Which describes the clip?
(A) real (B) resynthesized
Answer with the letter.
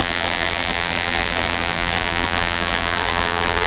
B